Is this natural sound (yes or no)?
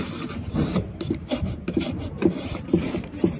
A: no